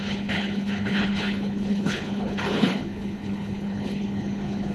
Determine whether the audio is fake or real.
fake